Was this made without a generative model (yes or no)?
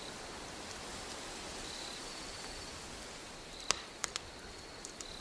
yes